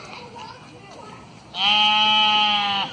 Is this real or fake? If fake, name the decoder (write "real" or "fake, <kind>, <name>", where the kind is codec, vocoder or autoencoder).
real